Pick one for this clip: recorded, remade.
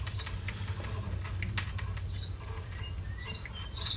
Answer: recorded